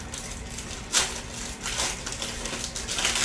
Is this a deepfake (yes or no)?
no